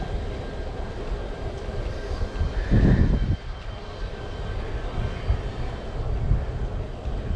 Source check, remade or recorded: recorded